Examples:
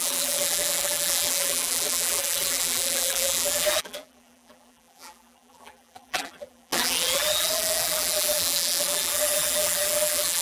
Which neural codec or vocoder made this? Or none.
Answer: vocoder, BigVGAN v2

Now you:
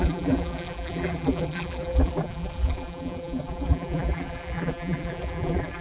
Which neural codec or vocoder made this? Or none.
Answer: vocoder, BigVGAN v2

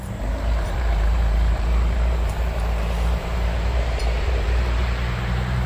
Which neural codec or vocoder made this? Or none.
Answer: vocoder, BigVGAN v2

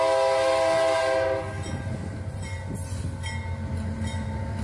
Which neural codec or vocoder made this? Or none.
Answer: none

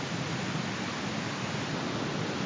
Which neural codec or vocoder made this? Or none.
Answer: none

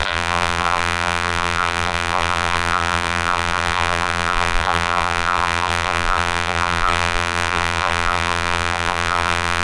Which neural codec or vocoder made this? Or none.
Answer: vocoder, BigVGAN v2